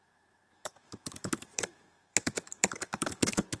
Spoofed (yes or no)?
yes